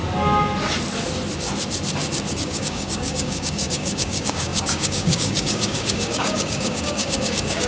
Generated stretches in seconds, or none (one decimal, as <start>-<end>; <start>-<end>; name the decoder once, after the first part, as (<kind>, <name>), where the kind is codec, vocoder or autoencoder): 2.3-7.7 (codec, DAC)

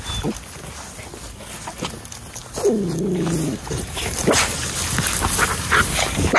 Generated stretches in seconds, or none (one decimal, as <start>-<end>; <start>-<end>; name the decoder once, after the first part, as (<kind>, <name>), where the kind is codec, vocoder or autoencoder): none

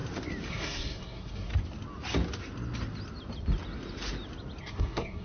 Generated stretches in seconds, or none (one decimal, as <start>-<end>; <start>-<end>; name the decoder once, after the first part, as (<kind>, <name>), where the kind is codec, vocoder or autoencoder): 0.5-1.5 (codec, SNAC); 4.6-5.2

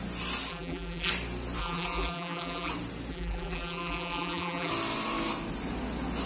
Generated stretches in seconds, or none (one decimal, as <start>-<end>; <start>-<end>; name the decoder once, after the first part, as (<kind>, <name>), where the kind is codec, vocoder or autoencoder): 0.5-1.1 (vocoder, BigVGAN v2); 1.6-2.7; 3.1-4.7

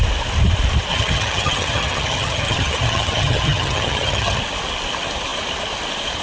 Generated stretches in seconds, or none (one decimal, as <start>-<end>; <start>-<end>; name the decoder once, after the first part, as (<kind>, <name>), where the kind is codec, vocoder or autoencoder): 0.9-4.4 (vocoder, HiFi-GAN)

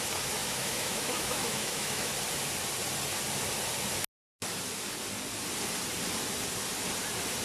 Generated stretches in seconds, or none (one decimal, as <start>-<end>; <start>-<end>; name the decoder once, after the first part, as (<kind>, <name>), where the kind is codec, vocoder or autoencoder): 0.4-2.1 (autoencoder, DAC-VAE)